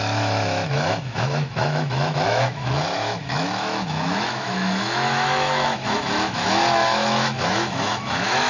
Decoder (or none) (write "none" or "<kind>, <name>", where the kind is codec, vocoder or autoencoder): autoencoder, DAC-VAE